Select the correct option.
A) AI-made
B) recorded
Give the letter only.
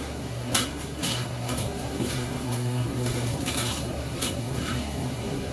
A